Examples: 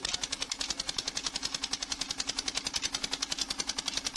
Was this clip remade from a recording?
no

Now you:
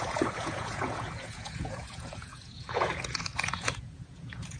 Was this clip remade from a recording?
yes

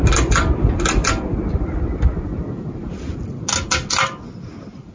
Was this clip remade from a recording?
no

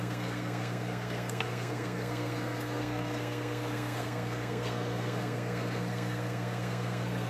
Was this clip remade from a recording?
yes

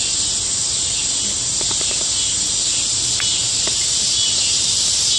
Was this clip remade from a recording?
no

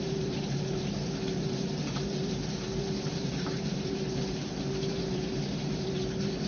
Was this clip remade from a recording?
yes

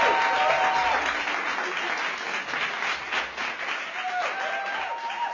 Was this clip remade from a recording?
no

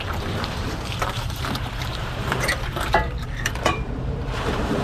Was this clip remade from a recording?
yes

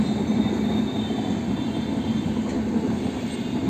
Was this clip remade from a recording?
no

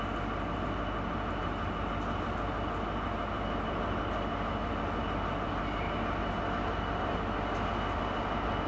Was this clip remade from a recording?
no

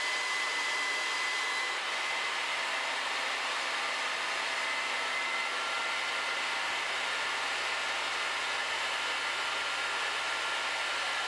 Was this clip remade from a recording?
no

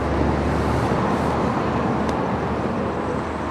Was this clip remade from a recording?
no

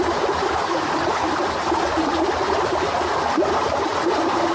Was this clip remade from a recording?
no